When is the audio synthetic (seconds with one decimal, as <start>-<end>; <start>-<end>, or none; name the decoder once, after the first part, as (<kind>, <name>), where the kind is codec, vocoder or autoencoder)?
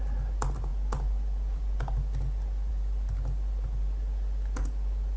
none